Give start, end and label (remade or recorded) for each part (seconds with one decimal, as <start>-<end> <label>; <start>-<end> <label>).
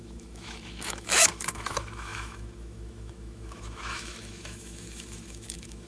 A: 0.0-5.9 remade